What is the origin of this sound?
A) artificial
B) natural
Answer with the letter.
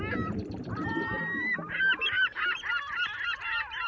A